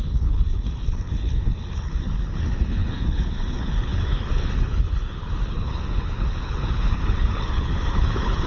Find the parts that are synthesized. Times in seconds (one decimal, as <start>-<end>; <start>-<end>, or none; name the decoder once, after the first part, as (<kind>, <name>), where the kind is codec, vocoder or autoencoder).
0.0-8.5 (codec, HILCodec)